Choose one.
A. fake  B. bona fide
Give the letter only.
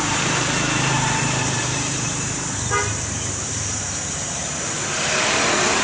A